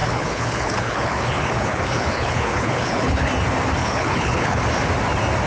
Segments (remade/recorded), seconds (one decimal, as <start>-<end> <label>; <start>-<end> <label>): 0.0-3.3 remade; 3.3-3.8 recorded; 3.8-4.6 remade; 4.6-5.5 recorded